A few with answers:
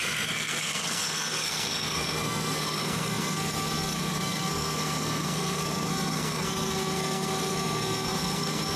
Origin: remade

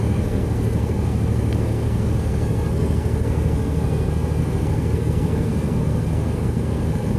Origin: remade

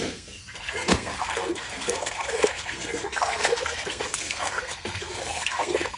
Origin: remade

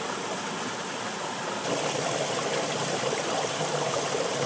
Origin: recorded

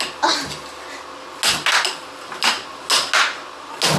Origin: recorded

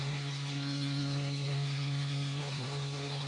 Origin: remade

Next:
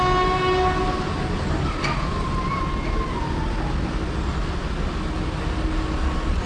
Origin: recorded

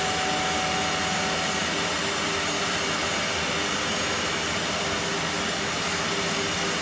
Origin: recorded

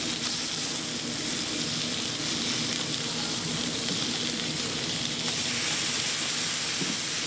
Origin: recorded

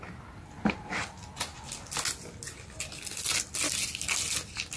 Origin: recorded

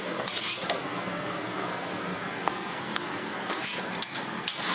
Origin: remade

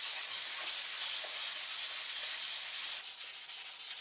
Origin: recorded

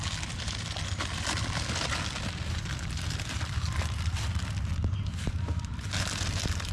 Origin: recorded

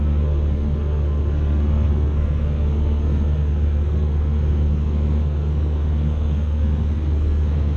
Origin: remade